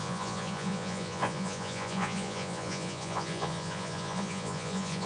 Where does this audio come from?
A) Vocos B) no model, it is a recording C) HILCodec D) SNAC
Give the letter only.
A